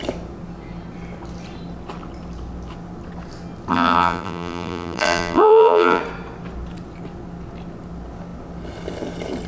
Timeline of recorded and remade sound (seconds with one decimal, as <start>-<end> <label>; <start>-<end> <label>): 0.0-3.7 recorded; 3.7-6.0 remade; 6.0-9.5 recorded

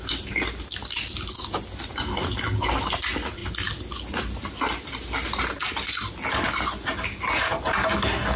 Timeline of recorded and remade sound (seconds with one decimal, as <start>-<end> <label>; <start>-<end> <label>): 0.0-8.4 recorded

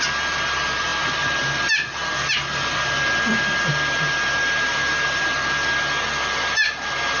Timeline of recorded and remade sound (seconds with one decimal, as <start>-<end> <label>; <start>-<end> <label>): 0.0-7.2 recorded